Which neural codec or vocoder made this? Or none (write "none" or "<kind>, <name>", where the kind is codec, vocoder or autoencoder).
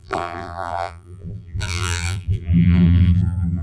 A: vocoder, BigVGAN v2